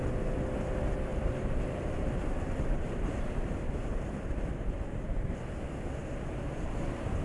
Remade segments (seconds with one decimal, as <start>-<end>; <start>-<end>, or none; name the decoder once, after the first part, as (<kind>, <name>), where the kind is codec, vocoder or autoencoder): 1.1-5.4 (vocoder, BigVGAN v2); 6.0-6.7

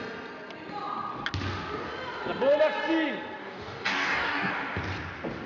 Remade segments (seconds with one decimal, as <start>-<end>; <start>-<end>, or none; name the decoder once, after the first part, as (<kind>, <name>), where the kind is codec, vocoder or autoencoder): 3.4-4.5 (codec, DAC)

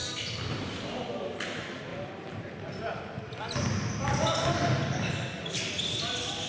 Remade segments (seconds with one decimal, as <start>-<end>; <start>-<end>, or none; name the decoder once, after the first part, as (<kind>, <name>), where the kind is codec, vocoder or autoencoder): none

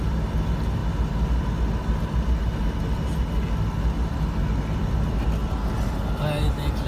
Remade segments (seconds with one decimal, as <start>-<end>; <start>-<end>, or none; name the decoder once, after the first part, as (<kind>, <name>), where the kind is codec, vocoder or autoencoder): none